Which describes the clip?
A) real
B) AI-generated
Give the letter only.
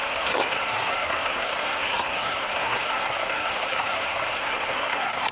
B